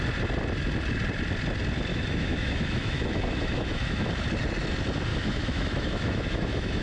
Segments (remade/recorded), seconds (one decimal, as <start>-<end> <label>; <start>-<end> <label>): 0.0-1.9 recorded; 1.9-4.1 remade; 4.1-5.1 recorded; 5.1-6.8 remade

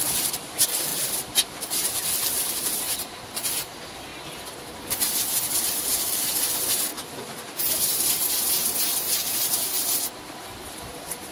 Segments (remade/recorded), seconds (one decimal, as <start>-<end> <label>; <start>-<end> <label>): 0.0-4.1 remade; 4.1-5.5 recorded; 5.5-6.9 remade; 6.9-10.7 recorded; 10.7-11.3 remade

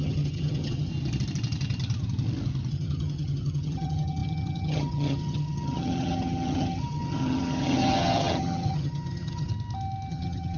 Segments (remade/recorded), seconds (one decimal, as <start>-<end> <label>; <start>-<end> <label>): 0.0-0.9 remade; 0.9-2.7 recorded; 2.7-9.5 remade; 9.5-10.1 recorded; 10.1-10.6 remade

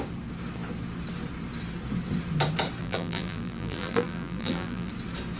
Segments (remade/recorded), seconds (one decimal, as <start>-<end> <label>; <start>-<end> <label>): 0.0-2.8 recorded; 2.8-4.9 remade; 4.9-5.4 recorded

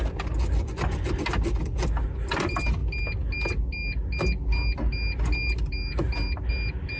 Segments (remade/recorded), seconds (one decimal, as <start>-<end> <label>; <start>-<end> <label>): 0.0-7.0 recorded

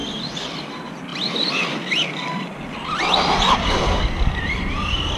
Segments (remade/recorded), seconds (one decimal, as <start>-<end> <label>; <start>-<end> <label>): 0.0-5.2 recorded